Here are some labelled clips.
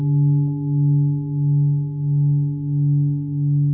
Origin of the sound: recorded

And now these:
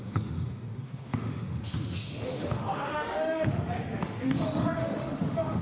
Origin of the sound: remade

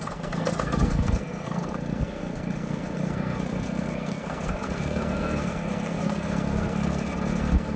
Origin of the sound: remade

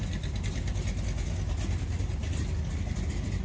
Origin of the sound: recorded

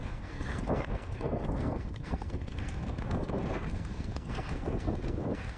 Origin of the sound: remade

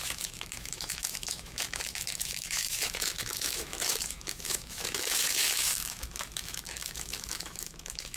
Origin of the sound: remade